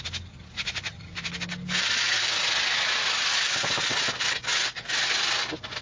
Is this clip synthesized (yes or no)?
no